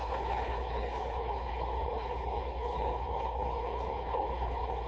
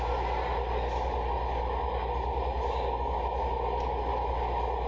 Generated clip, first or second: first